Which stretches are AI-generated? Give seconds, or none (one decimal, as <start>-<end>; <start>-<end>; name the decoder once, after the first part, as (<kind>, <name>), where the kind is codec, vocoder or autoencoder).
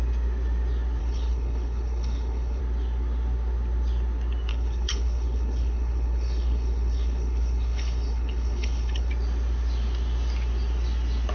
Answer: 1.0-2.6 (codec, HILCodec); 4.5-9.1